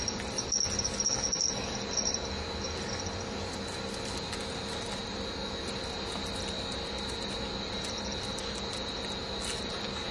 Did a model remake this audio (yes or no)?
no